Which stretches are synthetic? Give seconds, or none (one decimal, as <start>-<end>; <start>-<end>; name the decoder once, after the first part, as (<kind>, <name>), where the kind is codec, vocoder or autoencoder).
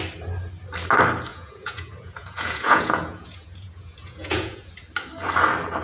1.3-4.7 (vocoder, Vocos)